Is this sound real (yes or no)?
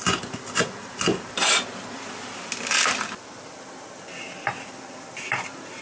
yes